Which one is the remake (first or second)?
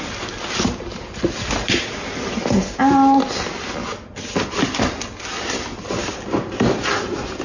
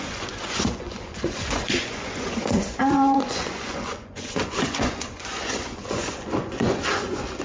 second